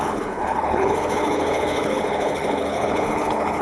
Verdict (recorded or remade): remade